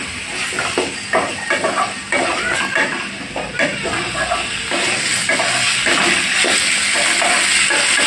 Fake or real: real